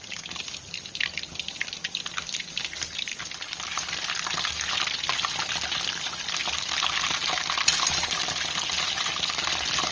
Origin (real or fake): real